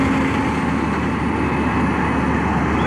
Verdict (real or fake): real